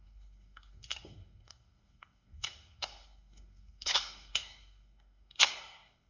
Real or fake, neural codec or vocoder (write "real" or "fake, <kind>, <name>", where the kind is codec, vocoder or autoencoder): fake, codec, SNAC